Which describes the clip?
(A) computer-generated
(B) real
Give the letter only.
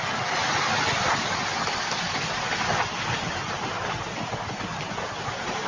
B